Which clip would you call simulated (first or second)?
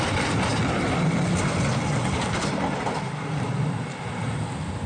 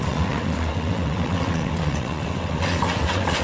second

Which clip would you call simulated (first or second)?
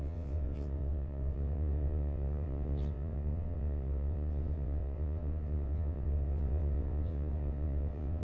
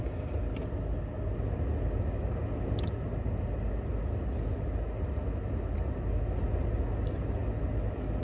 first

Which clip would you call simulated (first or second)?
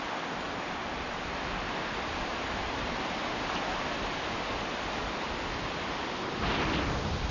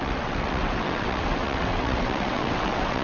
second